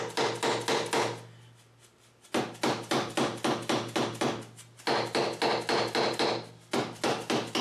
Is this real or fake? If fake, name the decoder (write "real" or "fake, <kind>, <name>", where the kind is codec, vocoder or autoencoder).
real